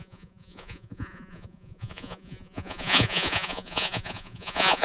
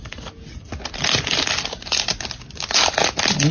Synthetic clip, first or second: first